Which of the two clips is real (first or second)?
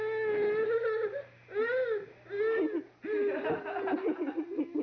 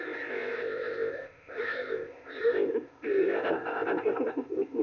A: first